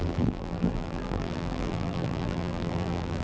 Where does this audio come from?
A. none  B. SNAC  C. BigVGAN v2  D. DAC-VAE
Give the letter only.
C